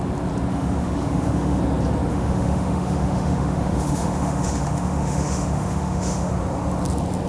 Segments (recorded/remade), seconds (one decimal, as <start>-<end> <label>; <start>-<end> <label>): 0.0-0.5 recorded; 0.5-1.6 remade; 1.6-2.1 recorded; 2.1-6.3 remade; 6.3-7.3 recorded